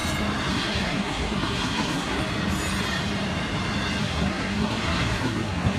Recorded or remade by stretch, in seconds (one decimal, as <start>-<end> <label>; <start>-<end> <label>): 0.0-0.5 recorded; 0.5-2.2 remade; 2.2-4.0 recorded; 4.0-5.8 remade